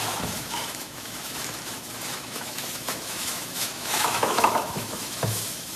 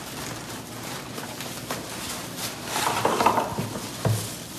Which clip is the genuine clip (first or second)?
second